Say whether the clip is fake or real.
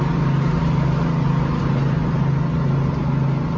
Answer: real